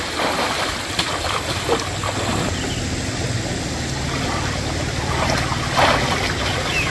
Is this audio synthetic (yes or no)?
no